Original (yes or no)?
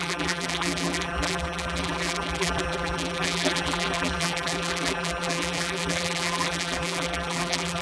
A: no